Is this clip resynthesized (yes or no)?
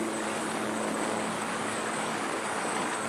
yes